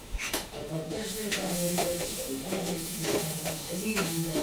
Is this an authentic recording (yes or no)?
no